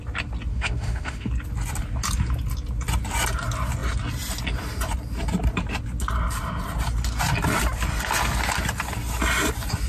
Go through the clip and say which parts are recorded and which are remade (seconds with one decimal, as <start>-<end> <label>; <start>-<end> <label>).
0.0-0.5 recorded; 0.5-1.3 remade; 1.3-9.9 recorded